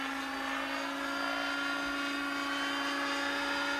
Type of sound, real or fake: real